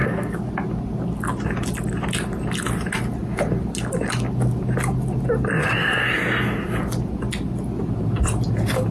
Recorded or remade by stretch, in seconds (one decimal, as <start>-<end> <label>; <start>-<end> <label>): 0.0-0.5 remade; 0.5-8.9 recorded